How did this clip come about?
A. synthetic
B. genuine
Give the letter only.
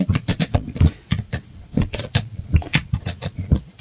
A